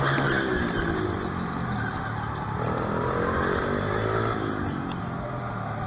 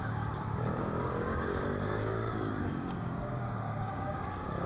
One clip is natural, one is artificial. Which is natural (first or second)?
first